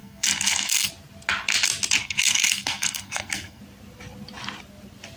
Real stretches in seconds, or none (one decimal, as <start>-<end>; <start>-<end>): 0.9-2.0; 3.6-5.2